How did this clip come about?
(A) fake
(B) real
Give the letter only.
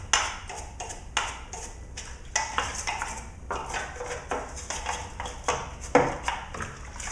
B